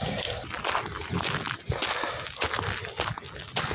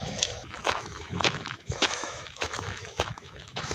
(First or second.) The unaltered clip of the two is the first